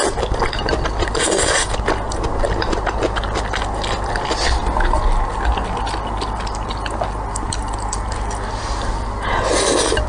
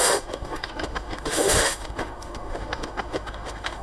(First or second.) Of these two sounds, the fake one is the second